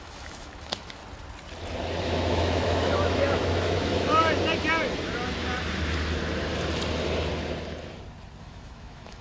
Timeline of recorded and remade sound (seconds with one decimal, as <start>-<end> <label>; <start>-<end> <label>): 0.0-1.0 remade; 1.0-2.0 recorded; 2.0-4.2 remade; 4.2-8.4 recorded; 8.4-9.2 remade